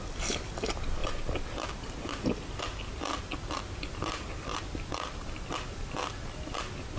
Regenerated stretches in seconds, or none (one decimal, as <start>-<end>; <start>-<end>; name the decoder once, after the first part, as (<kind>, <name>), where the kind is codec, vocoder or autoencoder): none